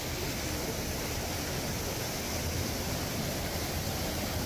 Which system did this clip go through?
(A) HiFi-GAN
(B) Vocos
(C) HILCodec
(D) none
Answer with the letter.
D